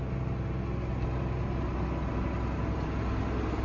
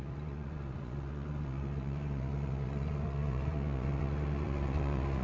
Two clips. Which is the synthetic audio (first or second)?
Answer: second